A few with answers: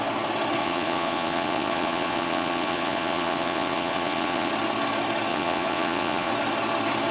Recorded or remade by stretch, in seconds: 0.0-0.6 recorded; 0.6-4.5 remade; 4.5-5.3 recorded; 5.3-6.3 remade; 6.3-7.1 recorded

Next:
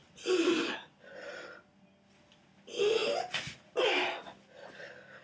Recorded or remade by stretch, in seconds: 0.0-5.2 recorded